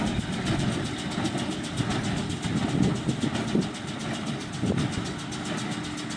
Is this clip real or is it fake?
real